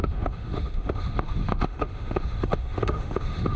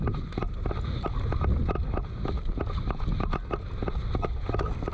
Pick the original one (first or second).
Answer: second